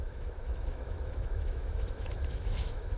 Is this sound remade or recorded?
remade